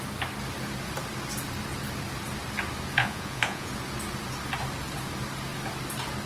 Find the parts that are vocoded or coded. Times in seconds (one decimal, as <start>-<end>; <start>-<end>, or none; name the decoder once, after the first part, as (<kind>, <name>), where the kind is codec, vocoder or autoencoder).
3.0-3.7 (vocoder, Vocos)